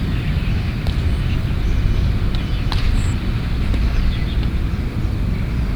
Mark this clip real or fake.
real